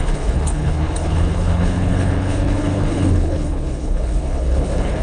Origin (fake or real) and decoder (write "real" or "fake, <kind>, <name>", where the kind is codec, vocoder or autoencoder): fake, codec, HILCodec